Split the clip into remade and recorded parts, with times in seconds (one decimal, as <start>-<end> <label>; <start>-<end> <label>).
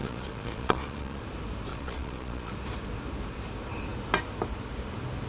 0.0-1.2 remade; 1.2-1.7 recorded; 1.7-2.5 remade; 2.5-5.3 recorded